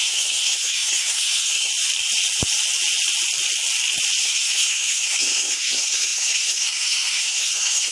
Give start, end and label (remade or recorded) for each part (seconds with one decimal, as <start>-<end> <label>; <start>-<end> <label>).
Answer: 0.0-1.7 remade; 1.7-4.2 recorded; 4.2-7.9 remade